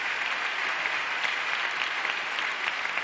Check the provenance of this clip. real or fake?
real